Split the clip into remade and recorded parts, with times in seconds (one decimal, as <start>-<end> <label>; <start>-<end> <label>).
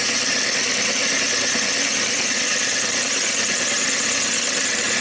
0.0-5.0 remade